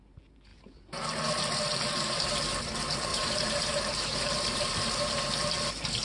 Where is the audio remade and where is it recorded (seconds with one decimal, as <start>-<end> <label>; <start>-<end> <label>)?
0.0-3.1 recorded; 3.1-5.2 remade; 5.2-6.0 recorded